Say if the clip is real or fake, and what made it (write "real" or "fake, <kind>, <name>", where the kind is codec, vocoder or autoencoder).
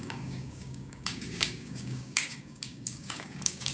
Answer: fake, codec, DAC